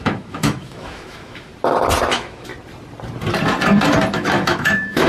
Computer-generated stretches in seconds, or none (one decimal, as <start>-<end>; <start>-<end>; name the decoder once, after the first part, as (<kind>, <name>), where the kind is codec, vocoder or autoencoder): 0.0-1.5 (autoencoder, DAC-VAE); 2.1-2.5; 4.1-5.1

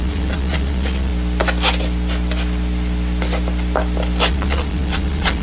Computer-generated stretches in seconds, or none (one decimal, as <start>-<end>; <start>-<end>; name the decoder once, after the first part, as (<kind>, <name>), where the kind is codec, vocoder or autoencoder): 0.0-1.1 (vocoder, Vocos); 4.3-5.4

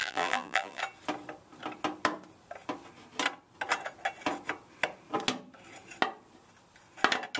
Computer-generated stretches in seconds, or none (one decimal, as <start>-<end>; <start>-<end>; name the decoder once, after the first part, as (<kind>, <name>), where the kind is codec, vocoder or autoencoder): 0.0-0.8 (vocoder, BigVGAN v2)

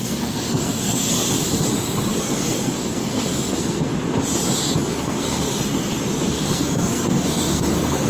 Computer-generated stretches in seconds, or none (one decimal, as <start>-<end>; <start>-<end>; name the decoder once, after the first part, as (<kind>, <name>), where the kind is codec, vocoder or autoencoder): 0.0-1.2 (codec, SNAC); 2.1-3.9; 4.8-5.5; 6.3-8.1

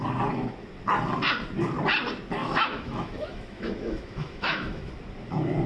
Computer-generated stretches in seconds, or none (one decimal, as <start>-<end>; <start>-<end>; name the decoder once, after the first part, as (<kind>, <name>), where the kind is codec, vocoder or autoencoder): 2.4-4.9 (autoencoder, DAC-VAE)